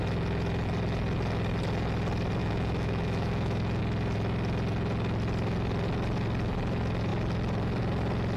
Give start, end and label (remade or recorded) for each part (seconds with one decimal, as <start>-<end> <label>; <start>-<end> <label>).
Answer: 0.0-2.4 recorded; 2.4-3.8 remade; 3.8-8.4 recorded